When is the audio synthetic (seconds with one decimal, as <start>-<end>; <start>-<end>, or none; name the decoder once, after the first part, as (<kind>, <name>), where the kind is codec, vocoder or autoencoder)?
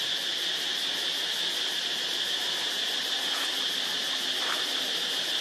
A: 1.8-3.0 (vocoder, BigVGAN v2)